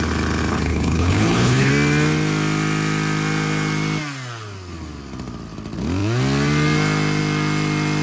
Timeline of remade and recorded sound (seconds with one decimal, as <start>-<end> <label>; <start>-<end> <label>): 0.0-0.5 recorded; 0.5-1.7 remade; 1.7-8.0 recorded